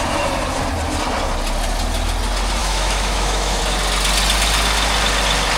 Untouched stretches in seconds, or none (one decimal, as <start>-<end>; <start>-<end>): 0.0-2.6; 3.6-5.6